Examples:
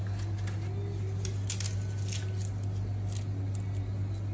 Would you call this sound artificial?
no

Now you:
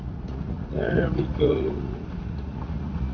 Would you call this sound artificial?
yes